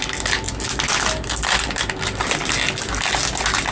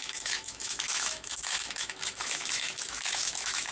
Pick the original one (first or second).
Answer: first